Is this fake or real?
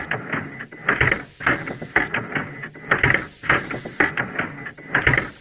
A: real